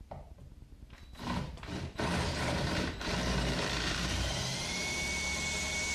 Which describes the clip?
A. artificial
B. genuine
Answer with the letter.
A